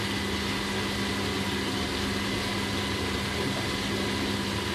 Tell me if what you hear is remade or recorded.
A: recorded